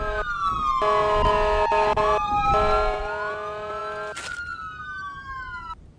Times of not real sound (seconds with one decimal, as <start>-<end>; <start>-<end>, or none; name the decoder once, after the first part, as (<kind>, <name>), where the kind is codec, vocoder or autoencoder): none